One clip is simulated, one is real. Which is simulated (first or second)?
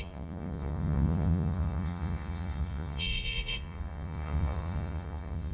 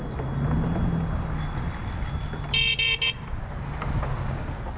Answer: first